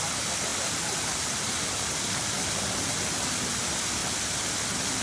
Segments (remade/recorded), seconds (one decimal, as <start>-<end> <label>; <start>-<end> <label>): 0.0-5.0 recorded